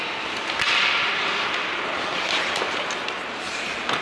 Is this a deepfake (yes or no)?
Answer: no